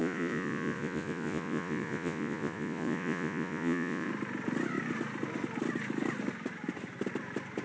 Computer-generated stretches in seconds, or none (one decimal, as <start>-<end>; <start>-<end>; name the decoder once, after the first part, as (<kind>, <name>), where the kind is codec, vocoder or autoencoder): 0.0-4.1 (vocoder, Vocos)